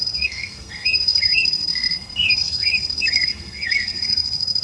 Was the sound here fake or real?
fake